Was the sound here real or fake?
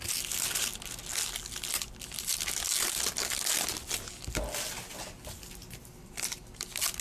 real